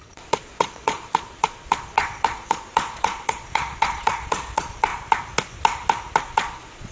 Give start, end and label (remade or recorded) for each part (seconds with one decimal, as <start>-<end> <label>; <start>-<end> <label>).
0.0-4.9 remade; 4.9-6.2 recorded; 6.2-6.9 remade